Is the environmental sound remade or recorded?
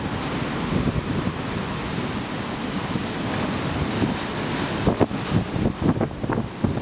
recorded